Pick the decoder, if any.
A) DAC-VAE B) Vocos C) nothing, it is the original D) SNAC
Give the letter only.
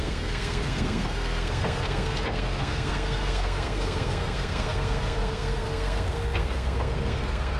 D